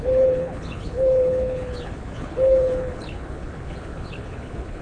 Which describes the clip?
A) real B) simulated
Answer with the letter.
B